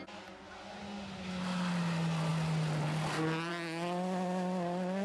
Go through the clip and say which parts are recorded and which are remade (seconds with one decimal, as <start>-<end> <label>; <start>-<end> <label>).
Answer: 0.0-5.0 recorded